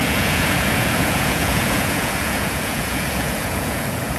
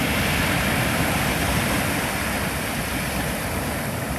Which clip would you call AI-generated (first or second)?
first